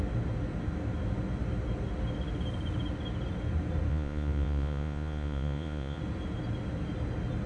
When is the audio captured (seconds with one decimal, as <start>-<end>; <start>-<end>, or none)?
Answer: 0.0-3.9; 6.0-7.5